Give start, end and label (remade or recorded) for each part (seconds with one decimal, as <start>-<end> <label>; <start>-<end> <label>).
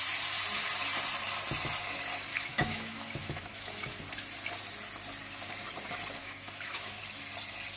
0.0-2.3 recorded; 2.3-4.0 remade; 4.0-6.2 recorded; 6.2-7.0 remade; 7.0-7.8 recorded